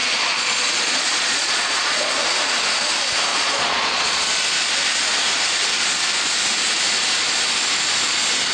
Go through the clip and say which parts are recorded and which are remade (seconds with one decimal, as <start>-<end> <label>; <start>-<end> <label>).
0.0-2.1 remade; 2.1-3.3 recorded; 3.3-4.3 remade; 4.3-8.5 recorded